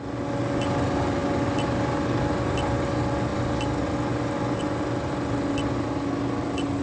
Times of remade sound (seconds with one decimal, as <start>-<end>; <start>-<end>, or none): none

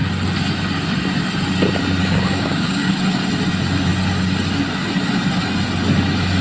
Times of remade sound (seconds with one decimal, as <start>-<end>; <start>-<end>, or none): 2.0-2.9

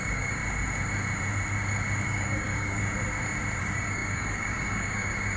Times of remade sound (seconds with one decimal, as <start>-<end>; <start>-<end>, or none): 0.0-0.4; 2.0-2.8; 3.6-5.4

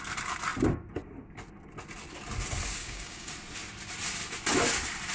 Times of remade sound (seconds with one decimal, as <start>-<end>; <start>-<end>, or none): 2.8-3.3